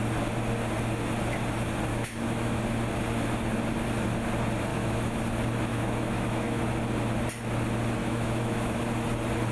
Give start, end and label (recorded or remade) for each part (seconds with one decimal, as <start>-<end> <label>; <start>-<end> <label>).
0.0-1.9 recorded; 1.9-2.6 remade; 2.6-4.7 recorded; 4.7-5.2 remade; 5.2-5.7 recorded; 5.7-6.6 remade; 6.6-8.0 recorded; 8.0-8.8 remade; 8.8-9.5 recorded